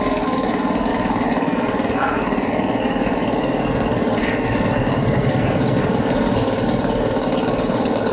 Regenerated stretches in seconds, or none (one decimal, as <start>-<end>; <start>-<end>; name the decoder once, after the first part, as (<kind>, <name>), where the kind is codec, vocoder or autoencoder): 0.0-8.1 (codec, SNAC)